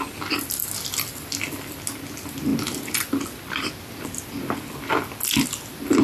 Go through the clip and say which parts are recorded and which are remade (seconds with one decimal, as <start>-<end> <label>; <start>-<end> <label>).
0.0-6.0 recorded